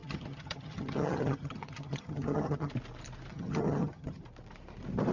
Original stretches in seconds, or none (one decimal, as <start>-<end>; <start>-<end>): 2.7-3.3; 4.2-5.1